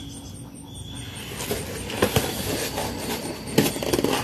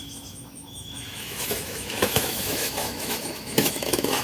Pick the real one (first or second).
first